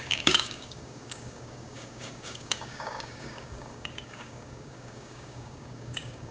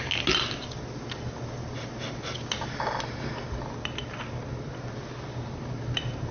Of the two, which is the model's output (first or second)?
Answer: first